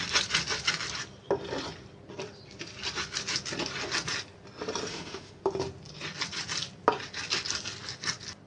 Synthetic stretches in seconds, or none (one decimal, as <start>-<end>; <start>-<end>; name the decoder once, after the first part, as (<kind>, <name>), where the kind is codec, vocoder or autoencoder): 4.9-5.4 (autoencoder, DAC-VAE)